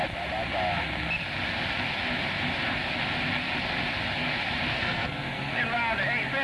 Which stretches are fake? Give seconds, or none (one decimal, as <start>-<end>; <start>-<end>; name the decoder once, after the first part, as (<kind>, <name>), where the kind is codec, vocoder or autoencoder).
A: 4.7-5.6 (codec, SNAC)